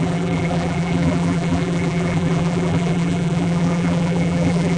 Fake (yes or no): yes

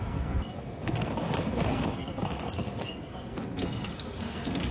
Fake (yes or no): yes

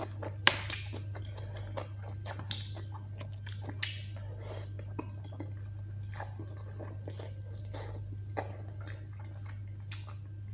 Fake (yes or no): no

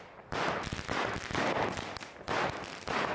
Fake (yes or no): no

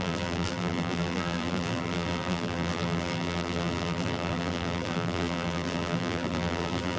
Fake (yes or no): yes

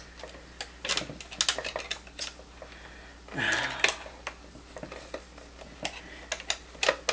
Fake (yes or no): no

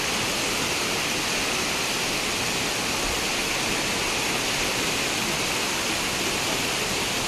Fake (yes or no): no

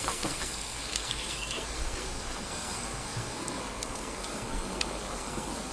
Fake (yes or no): yes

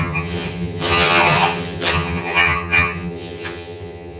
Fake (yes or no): yes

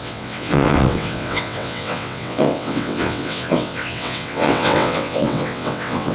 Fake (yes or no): yes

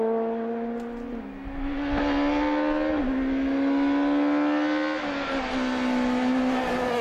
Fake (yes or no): no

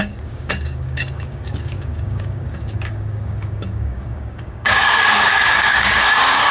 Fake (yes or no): yes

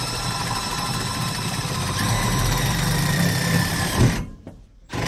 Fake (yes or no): yes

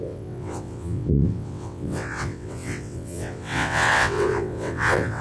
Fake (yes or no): yes